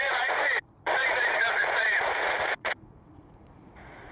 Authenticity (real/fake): fake